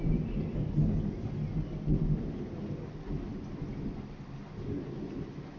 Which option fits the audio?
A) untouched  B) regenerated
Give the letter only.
A